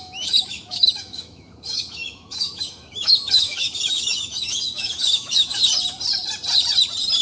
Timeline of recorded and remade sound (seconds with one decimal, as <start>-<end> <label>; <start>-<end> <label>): 0.0-5.6 remade; 5.6-7.2 recorded